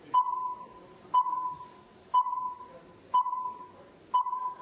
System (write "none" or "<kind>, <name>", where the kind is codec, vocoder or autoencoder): none